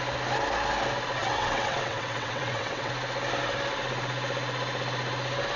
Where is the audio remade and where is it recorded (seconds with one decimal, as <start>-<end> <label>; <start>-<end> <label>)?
0.0-1.2 recorded; 1.2-2.9 remade; 2.9-5.6 recorded